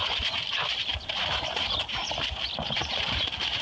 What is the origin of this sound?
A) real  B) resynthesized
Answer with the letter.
A